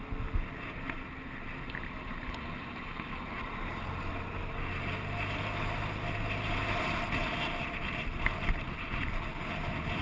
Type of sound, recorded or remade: recorded